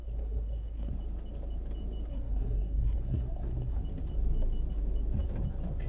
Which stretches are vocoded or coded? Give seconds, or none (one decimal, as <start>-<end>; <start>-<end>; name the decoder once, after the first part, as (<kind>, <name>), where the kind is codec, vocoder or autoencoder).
0.0-0.9 (codec, SNAC); 2.1-3.8